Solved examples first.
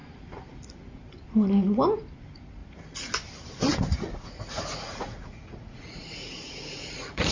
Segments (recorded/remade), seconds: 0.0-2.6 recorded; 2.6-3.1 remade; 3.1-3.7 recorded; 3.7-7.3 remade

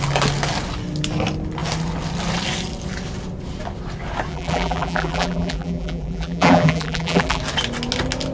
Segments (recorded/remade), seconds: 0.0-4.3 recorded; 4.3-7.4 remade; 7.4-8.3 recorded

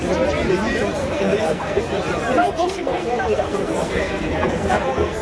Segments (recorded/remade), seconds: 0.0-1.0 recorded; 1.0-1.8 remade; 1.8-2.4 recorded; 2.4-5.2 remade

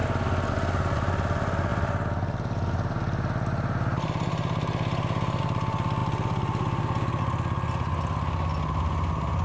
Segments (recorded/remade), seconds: 0.0-9.4 recorded

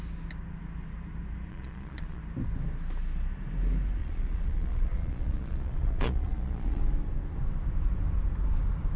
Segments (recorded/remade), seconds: 0.0-1.5 recorded; 1.5-2.2 remade; 2.2-4.0 recorded; 4.0-6.8 remade; 6.8-9.0 recorded